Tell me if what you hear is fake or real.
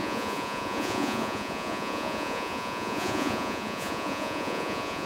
fake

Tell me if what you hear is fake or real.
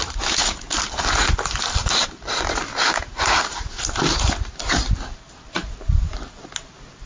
real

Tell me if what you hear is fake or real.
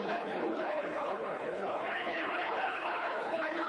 fake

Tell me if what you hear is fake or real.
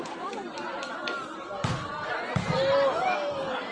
fake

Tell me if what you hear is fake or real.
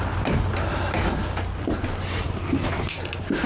real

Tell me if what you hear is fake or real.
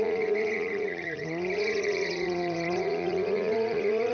fake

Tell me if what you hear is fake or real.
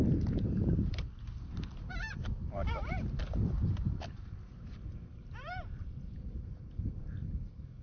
fake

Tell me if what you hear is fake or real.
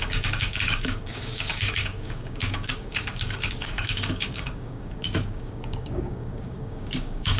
fake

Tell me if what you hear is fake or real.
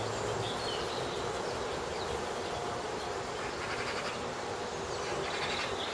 real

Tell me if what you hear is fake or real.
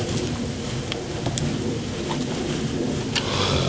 real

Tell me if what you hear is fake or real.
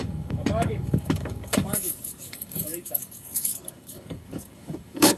fake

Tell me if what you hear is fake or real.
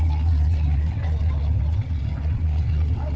fake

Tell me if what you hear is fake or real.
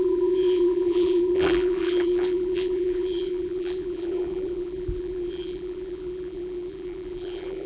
fake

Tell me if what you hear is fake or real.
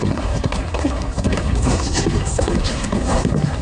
fake